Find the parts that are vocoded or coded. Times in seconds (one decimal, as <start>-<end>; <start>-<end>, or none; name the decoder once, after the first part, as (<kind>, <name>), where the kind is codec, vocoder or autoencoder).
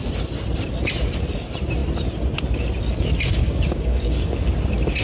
3.4-4.3 (codec, DAC)